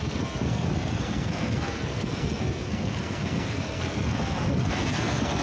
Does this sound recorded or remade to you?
remade